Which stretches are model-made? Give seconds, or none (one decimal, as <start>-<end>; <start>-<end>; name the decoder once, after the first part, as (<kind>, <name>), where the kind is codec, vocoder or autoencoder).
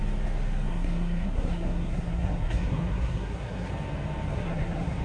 0.7-3.7 (codec, SNAC); 4.3-5.0